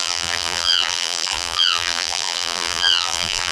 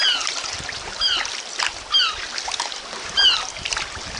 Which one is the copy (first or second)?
first